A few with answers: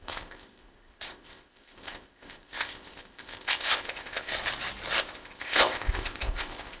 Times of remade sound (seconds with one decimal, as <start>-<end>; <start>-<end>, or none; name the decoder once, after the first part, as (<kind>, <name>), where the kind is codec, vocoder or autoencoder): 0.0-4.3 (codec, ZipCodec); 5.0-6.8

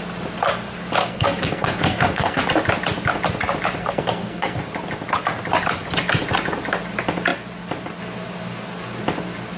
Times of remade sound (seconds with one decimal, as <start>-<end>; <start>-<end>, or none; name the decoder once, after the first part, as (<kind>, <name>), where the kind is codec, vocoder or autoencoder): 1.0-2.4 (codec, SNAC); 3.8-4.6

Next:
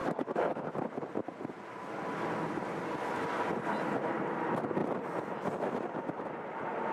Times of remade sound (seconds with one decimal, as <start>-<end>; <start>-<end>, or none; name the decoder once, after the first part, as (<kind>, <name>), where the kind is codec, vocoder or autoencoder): 0.0-0.7 (codec, SNAC)

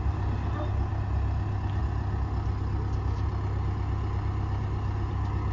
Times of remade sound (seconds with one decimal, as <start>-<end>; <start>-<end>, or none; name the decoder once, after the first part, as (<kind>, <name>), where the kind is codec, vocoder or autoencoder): none

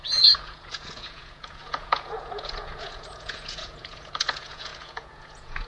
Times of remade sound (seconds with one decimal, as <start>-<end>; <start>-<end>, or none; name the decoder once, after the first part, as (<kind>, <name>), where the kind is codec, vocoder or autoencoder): 0.0-5.7 (vocoder, Vocos)

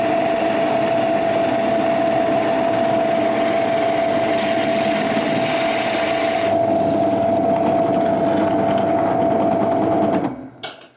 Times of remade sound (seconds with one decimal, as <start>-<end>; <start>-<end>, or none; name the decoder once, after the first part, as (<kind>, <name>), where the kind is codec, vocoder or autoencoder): none

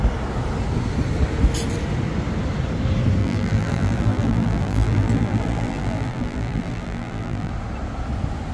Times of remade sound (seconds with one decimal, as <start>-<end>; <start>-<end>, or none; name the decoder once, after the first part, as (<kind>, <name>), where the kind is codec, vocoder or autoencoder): 3.2-7.5 (vocoder, BigVGAN v2)

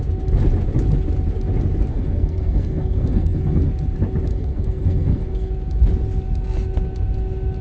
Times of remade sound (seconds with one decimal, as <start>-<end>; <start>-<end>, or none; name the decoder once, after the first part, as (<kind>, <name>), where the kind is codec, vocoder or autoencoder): 1.9-3.7 (codec, SNAC); 4.3-5.5